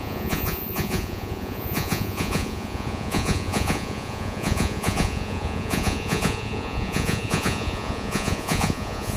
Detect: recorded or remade remade